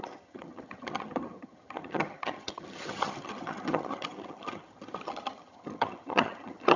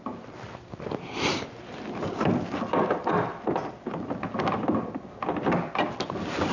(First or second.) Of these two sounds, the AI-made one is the first